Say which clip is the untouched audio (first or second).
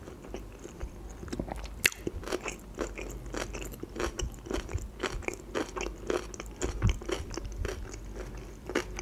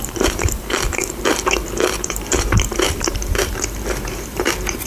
first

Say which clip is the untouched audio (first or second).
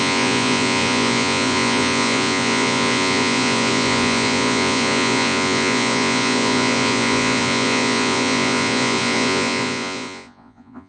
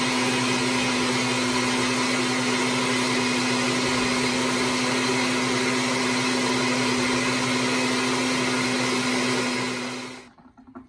second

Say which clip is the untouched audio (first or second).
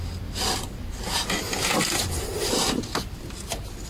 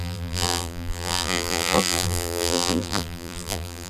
first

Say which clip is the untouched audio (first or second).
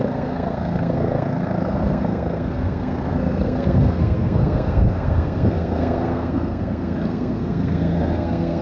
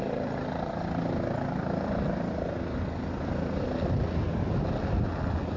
second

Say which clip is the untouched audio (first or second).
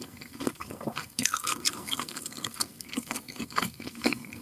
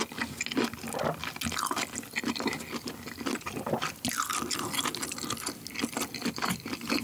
second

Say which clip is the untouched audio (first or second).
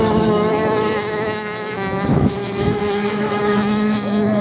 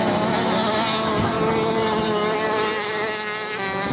second